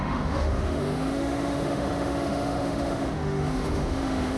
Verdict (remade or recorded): remade